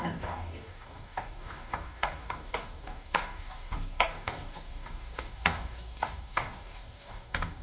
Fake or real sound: fake